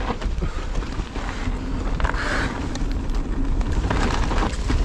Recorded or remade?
recorded